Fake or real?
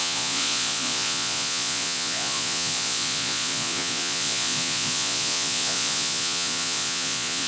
fake